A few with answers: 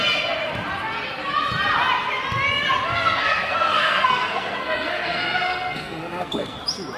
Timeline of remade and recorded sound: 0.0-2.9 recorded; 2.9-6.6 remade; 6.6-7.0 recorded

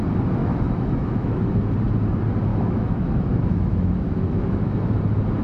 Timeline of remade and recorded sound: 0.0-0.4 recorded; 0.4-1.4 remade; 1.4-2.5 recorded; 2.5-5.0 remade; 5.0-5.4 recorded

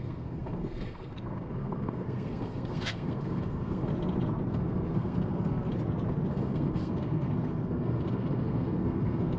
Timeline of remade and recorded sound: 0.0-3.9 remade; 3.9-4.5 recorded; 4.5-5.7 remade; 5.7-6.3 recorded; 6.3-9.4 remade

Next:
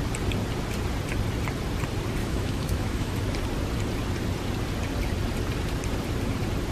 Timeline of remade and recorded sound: 0.0-2.2 recorded; 2.2-3.2 remade; 3.2-6.7 recorded